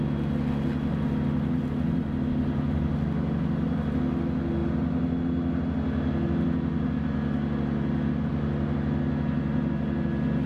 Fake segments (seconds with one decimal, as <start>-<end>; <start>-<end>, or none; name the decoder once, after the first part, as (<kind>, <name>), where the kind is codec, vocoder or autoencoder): none